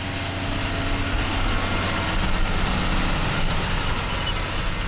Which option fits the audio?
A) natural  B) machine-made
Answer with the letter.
A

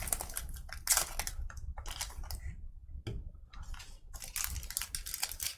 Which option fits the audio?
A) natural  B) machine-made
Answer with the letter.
A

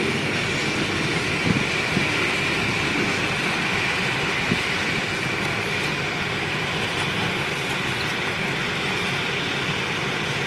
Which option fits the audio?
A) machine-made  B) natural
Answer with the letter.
B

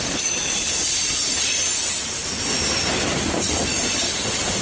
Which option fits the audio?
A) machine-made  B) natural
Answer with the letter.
B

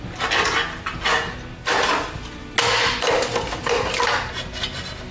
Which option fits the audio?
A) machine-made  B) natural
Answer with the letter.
B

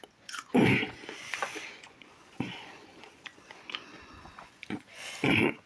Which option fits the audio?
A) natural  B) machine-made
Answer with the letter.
B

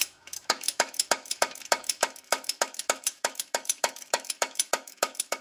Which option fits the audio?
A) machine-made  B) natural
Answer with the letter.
A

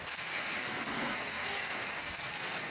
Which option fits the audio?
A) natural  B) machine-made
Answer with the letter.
B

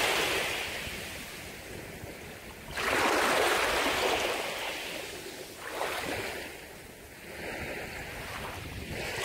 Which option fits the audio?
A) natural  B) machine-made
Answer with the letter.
A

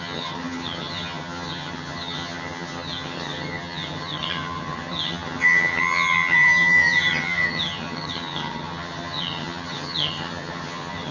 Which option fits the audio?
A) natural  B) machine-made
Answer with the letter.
B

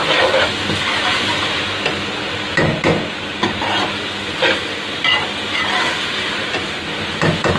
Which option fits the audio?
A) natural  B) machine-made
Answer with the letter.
A